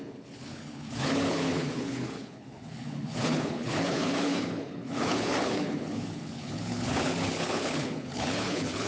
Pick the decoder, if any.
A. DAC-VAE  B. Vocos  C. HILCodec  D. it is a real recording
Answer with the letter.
C